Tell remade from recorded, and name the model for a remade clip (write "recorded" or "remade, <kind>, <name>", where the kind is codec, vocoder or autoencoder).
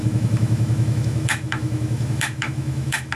remade, autoencoder, DAC-VAE